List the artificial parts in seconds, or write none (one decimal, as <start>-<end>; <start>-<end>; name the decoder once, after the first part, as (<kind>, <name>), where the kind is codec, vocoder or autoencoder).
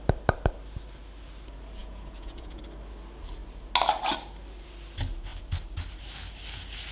1.8-2.6 (vocoder, Vocos)